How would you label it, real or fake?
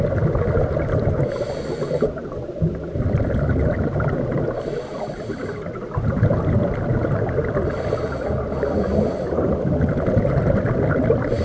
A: real